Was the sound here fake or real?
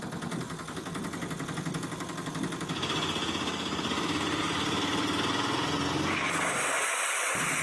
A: real